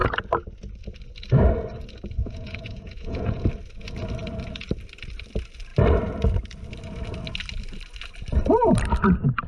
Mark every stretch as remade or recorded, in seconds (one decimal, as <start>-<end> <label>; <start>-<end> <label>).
0.0-2.2 recorded; 2.2-3.5 remade; 3.5-9.5 recorded